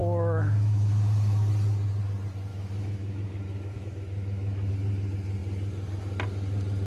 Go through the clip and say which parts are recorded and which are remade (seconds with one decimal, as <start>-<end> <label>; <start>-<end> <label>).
0.0-1.5 remade; 1.5-2.5 recorded; 2.5-4.7 remade; 4.7-6.9 recorded